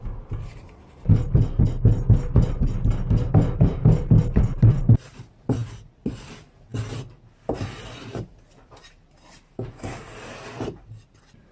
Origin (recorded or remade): recorded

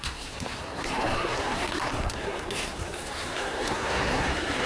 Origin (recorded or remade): remade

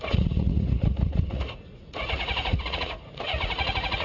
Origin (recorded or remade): remade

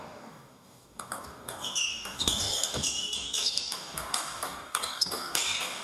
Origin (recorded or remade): remade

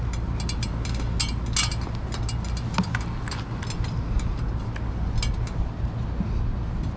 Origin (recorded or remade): recorded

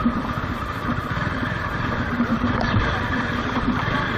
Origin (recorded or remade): remade